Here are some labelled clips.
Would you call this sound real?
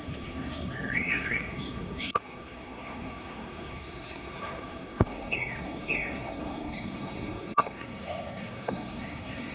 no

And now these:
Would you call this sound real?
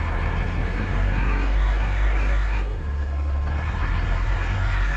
no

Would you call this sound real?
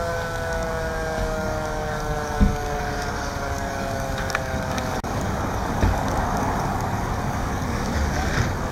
no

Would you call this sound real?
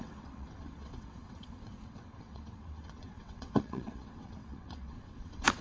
no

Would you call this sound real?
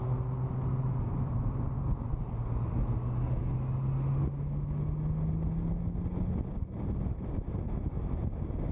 yes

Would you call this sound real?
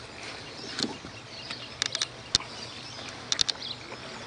yes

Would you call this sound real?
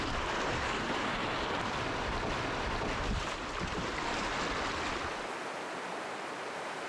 yes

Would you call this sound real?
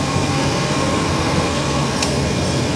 no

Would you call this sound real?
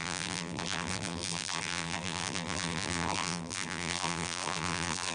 no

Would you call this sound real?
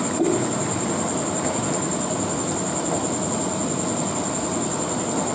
yes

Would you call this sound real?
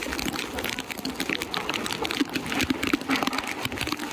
yes